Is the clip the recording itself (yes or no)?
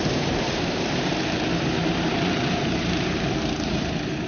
no